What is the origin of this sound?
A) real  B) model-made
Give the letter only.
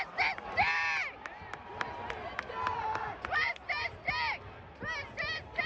A